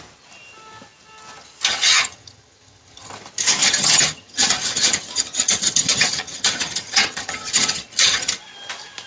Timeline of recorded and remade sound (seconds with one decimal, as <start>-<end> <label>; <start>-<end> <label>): 0.0-1.7 recorded; 1.7-3.1 remade; 3.1-3.6 recorded; 3.6-8.3 remade; 8.3-9.1 recorded